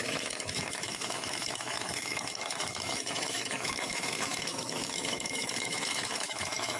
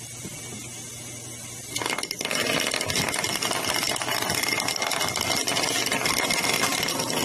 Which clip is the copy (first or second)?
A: first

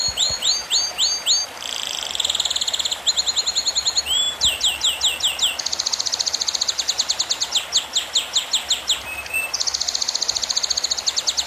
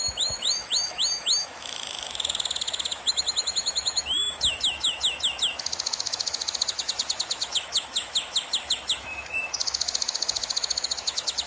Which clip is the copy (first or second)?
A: second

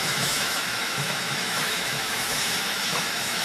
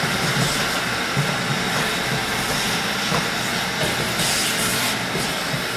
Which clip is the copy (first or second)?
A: first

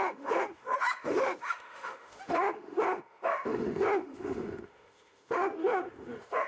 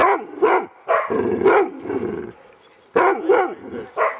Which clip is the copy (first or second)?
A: first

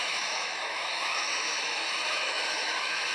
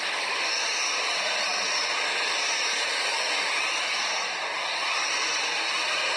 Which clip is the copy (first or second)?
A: first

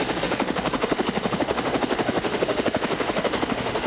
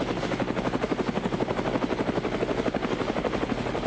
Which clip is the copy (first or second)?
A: first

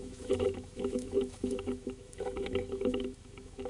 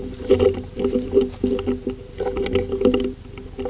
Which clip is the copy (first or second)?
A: first